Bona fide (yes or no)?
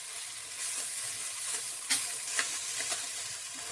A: yes